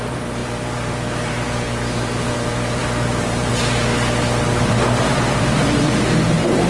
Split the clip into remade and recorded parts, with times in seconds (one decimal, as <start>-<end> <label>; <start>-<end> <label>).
0.0-3.9 remade; 3.9-4.5 recorded; 4.5-6.7 remade